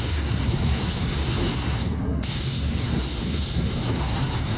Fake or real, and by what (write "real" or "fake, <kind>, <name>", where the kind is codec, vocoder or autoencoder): fake, codec, SNAC